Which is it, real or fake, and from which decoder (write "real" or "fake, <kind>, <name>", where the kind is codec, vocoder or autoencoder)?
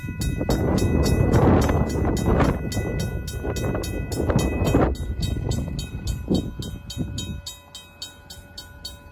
real